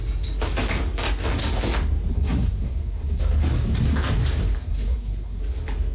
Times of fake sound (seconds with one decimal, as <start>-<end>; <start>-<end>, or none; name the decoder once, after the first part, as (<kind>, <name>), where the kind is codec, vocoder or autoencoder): 2.1-3.2 (codec, SNAC); 4.6-5.4